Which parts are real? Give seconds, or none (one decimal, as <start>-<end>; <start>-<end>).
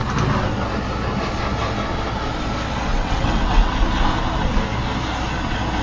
0.0-2.9; 3.7-5.8